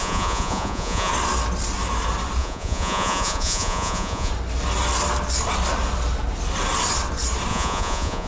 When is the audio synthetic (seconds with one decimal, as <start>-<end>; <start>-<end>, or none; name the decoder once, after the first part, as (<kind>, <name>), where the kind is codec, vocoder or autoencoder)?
0.0-1.1 (vocoder, Vocos); 2.4-4.3; 7.5-8.3